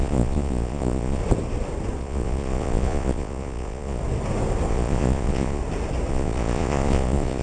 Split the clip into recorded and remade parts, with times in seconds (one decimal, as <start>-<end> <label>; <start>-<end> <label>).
0.0-1.2 remade; 1.2-2.0 recorded; 2.0-4.0 remade; 4.0-4.7 recorded; 4.7-5.6 remade; 5.6-6.1 recorded; 6.1-7.4 remade